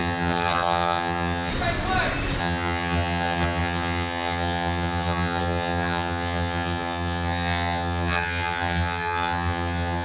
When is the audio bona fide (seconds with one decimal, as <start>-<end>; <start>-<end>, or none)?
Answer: 1.5-2.4